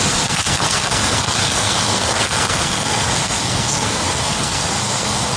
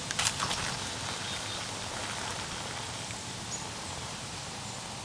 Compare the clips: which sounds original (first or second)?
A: second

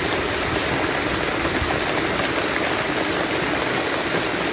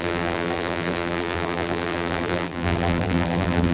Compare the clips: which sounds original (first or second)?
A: first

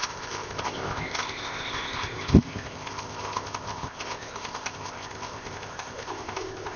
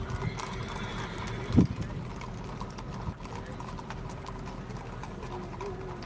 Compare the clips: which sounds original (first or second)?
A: second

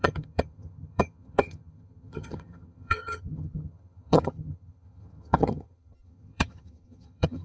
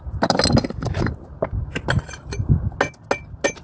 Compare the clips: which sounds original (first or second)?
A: second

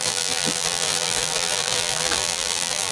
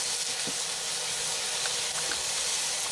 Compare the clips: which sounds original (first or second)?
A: second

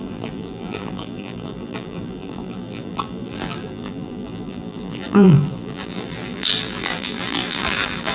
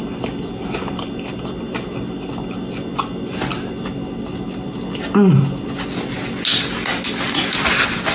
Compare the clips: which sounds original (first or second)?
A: second